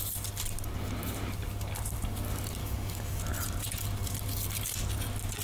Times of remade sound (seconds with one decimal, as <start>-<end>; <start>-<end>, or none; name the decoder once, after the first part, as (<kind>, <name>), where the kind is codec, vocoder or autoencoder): 2.6-3.2 (codec, DAC)